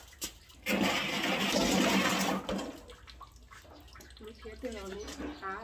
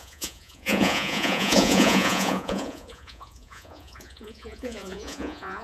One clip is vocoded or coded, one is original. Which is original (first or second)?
first